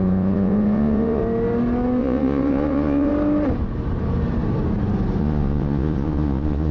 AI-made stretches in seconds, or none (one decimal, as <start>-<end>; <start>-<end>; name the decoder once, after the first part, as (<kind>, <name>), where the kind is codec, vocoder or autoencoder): 0.0-1.2 (vocoder, Vocos); 2.0-3.1; 5.2-6.7